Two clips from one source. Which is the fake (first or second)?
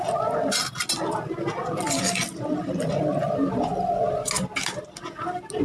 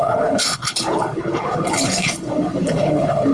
second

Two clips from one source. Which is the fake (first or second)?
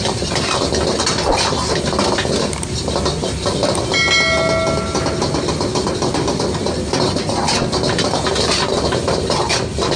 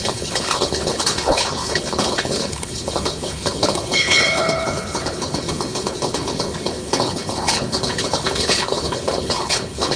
second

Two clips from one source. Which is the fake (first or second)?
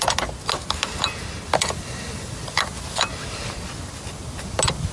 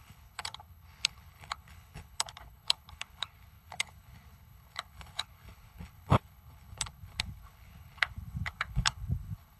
second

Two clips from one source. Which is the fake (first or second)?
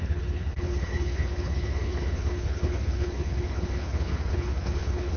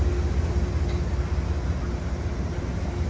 first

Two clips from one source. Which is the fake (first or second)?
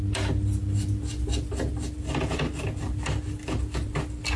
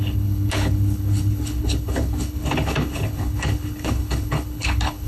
second